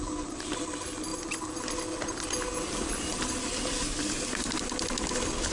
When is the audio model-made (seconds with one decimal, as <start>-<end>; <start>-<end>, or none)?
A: none